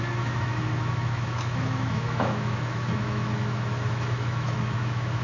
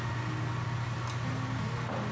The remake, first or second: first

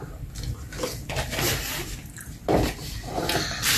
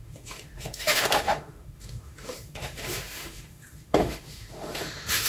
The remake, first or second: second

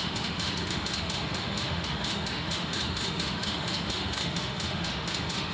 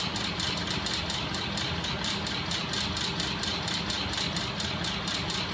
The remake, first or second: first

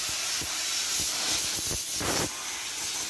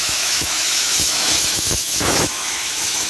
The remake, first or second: second